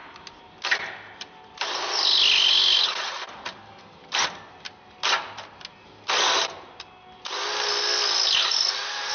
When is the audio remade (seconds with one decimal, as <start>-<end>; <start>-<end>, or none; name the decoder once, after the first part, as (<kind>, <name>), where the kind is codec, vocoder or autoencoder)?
none